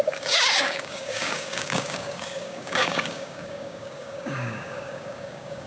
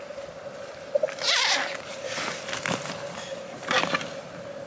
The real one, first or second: second